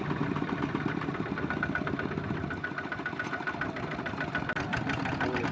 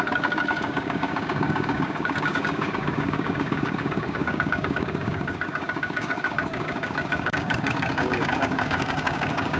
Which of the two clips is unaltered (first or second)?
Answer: first